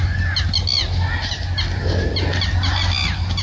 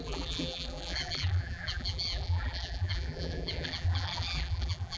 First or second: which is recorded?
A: first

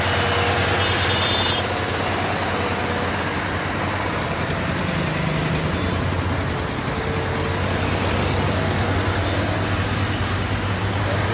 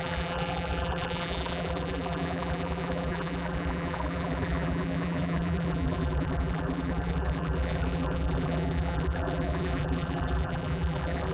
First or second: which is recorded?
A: first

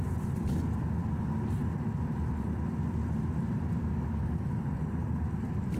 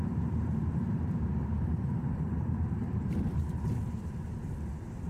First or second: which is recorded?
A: first